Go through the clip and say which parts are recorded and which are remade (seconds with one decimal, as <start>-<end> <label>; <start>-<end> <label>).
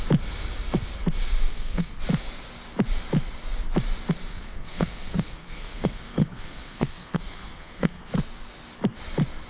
0.0-1.5 recorded; 1.5-2.0 remade; 2.0-4.3 recorded; 4.3-8.0 remade; 8.0-9.5 recorded